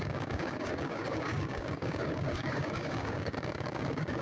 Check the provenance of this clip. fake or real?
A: fake